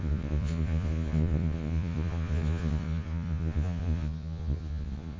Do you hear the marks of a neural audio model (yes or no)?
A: yes